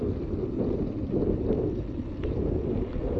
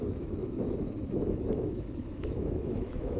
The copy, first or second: second